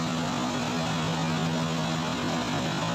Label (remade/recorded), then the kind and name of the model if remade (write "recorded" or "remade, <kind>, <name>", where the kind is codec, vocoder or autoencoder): recorded